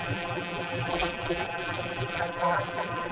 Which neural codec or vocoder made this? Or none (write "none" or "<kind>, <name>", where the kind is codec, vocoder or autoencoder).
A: vocoder, BigVGAN v2